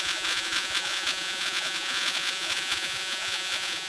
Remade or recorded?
remade